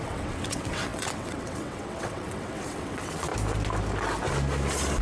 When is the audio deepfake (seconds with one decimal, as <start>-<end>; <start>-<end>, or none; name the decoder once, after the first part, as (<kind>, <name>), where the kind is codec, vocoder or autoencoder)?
0.0-3.3 (vocoder, WaveNeXt)